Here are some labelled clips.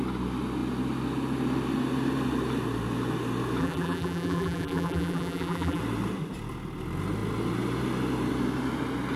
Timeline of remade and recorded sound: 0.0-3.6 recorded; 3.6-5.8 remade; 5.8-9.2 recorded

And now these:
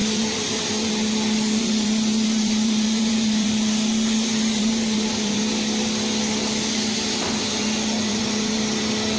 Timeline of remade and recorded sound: 0.0-0.9 remade; 0.9-1.6 recorded; 1.6-5.4 remade; 5.4-8.1 recorded; 8.1-8.6 remade; 8.6-9.2 recorded

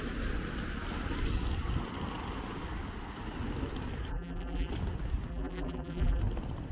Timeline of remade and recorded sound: 0.0-4.1 recorded; 4.1-4.7 remade; 4.7-5.3 recorded; 5.3-6.2 remade; 6.2-6.7 recorded

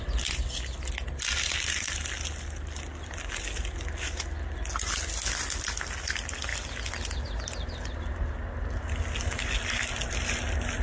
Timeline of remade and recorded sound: 0.0-10.8 recorded

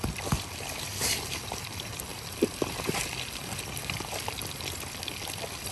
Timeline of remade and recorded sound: 0.0-2.1 recorded; 2.1-2.8 remade; 2.8-5.7 recorded

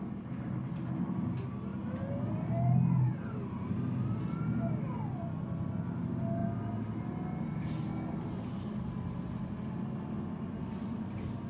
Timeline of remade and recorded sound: 0.0-11.5 recorded

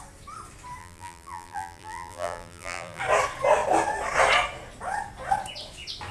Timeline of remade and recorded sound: 0.0-0.8 recorded; 0.8-3.0 remade; 3.0-6.1 recorded

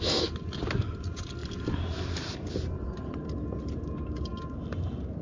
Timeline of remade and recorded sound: 0.0-5.2 recorded